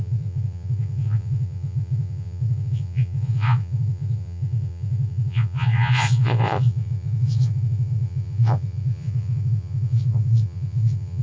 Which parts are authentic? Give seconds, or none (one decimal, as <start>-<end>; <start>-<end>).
none